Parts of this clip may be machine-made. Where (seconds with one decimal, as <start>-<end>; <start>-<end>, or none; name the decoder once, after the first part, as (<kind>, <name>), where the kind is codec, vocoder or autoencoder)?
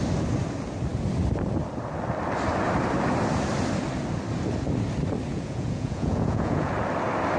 5.3-6.7 (vocoder, Vocos)